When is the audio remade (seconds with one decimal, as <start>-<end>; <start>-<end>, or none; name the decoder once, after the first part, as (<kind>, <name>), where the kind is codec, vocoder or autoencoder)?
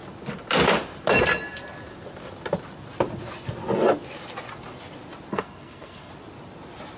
5.3-6.1 (codec, SNAC)